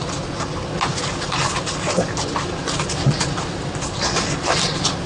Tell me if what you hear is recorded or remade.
recorded